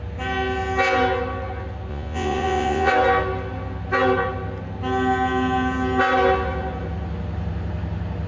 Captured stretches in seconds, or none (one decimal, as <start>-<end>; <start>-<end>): 0.0-1.9; 2.9-8.3